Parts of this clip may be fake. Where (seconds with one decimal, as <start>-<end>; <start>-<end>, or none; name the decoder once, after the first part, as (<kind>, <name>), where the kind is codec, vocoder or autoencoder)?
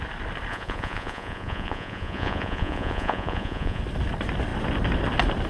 0.5-3.8 (vocoder, Vocos)